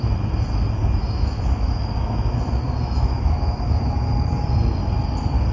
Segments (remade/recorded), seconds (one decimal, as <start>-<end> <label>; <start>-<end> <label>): 0.0-0.8 recorded; 0.8-4.1 remade; 4.1-5.5 recorded